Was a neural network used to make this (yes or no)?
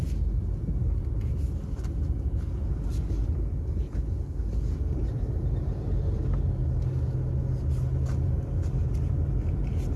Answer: no